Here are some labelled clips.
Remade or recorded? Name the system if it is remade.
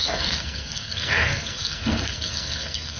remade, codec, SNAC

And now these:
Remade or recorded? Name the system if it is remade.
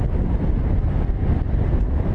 recorded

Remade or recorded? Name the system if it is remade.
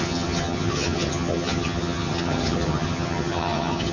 remade, vocoder, HiFi-GAN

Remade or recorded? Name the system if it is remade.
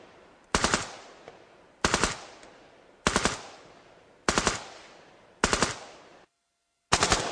recorded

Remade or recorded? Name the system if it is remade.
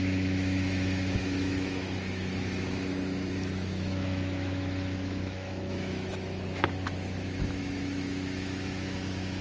remade, autoencoder, DAC-VAE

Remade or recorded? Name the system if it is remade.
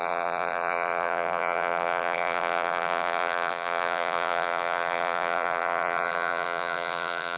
remade, vocoder, BigVGAN v2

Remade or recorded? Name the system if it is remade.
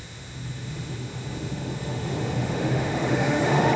remade, autoencoder, DAC-VAE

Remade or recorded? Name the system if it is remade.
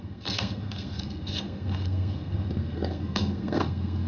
remade, codec, SNAC